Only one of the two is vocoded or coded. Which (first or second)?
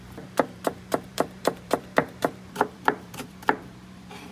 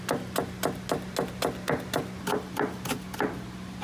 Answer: first